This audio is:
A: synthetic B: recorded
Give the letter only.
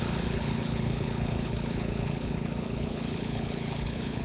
A